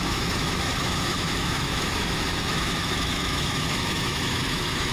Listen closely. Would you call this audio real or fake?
fake